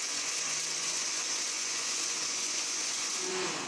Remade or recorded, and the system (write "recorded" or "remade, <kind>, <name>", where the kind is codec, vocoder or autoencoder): remade, vocoder, Vocos